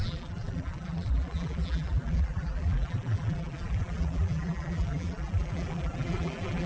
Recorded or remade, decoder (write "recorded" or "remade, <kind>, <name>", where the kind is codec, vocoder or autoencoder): remade, vocoder, BigVGAN v2